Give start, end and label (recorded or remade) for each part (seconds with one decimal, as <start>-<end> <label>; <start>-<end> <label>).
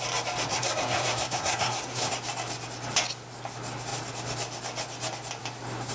0.0-0.5 recorded; 0.5-2.1 remade; 2.1-5.9 recorded